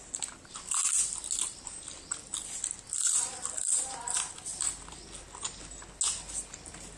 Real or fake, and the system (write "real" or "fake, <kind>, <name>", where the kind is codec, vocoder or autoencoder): real